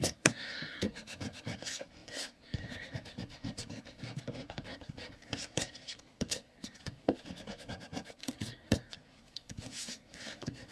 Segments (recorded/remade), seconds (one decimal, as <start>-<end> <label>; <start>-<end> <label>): 0.0-10.7 remade